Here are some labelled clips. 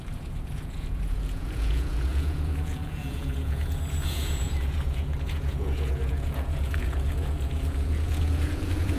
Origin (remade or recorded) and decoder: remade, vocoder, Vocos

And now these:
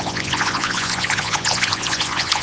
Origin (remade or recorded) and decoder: remade, vocoder, Vocos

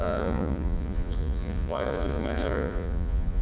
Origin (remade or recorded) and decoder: remade, vocoder, Vocos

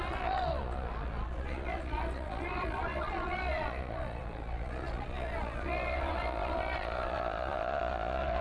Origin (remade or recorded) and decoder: remade, vocoder, Vocos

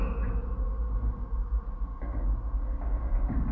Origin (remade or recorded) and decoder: recorded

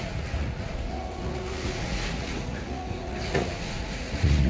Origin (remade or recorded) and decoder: remade, vocoder, Vocos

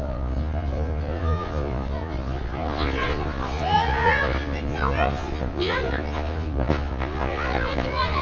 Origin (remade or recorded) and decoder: remade, vocoder, Vocos